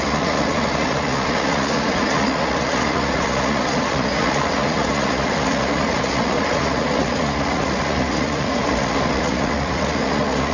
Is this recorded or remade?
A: remade